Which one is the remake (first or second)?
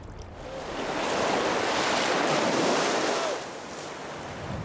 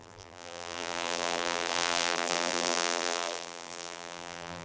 second